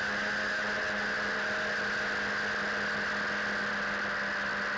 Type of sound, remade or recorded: recorded